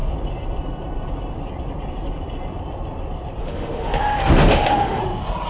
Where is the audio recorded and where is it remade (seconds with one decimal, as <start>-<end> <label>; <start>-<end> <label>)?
0.0-3.4 recorded; 3.4-5.0 remade; 5.0-5.5 recorded